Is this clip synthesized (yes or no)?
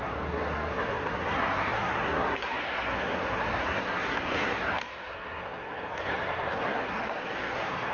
yes